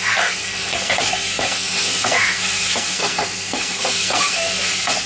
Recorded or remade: remade